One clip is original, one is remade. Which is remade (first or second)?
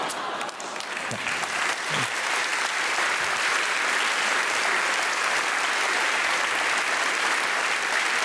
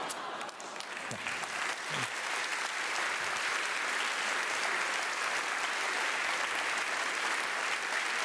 first